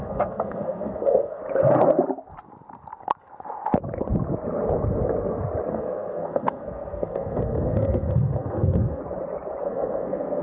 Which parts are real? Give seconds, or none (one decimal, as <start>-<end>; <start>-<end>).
1.4-5.7; 9.0-9.6